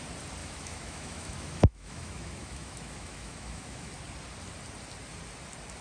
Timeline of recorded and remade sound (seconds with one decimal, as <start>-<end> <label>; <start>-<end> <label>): 0.0-0.4 recorded; 0.4-3.9 remade; 3.9-5.8 recorded